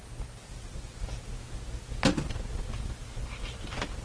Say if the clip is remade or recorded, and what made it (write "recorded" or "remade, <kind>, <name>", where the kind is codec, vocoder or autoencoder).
recorded